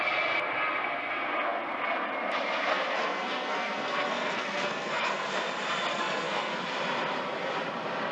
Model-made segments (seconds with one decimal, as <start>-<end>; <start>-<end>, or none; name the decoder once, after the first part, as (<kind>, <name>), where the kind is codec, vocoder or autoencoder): 2.7-5.3 (codec, SNAC); 5.9-6.6